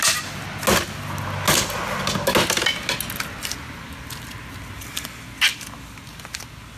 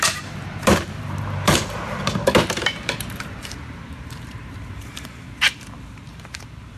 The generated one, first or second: second